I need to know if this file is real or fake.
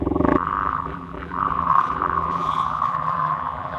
fake